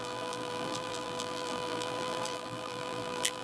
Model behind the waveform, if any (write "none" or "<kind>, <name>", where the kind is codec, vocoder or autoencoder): vocoder, BigVGAN v2